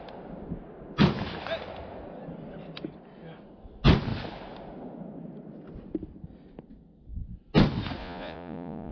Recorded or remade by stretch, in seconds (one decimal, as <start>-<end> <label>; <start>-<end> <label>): 0.0-8.0 recorded; 8.0-8.9 remade